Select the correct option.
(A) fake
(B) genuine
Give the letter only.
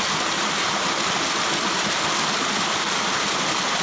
B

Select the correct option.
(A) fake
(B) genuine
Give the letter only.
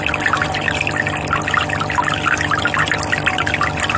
B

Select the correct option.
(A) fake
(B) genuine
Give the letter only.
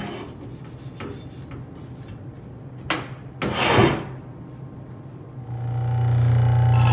B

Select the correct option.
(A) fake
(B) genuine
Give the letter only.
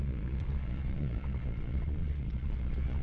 A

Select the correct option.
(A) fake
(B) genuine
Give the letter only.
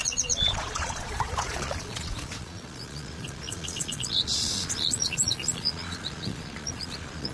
A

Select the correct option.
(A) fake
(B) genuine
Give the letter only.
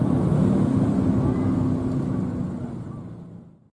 B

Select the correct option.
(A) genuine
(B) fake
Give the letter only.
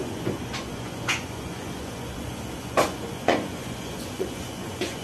B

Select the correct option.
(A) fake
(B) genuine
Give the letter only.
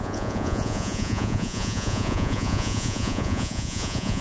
A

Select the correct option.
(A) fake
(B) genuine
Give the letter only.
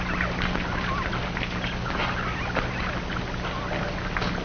B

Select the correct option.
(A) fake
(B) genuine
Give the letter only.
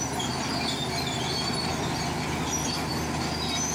B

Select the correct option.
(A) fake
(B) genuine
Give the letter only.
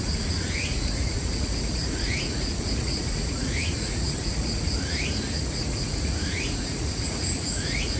A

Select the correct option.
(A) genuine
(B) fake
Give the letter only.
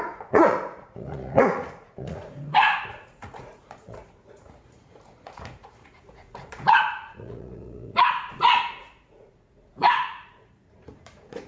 B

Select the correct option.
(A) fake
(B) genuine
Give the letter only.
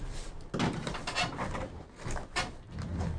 B